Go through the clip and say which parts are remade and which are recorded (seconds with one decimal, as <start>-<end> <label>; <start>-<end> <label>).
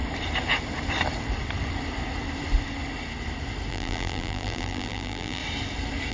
0.0-3.7 recorded; 3.7-5.4 remade; 5.4-6.1 recorded